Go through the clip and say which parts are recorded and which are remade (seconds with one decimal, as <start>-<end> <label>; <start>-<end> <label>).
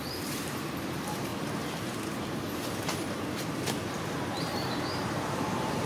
0.0-1.3 remade; 1.3-2.3 recorded; 2.3-5.9 remade